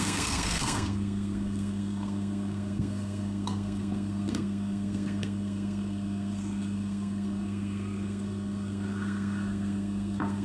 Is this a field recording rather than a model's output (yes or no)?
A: no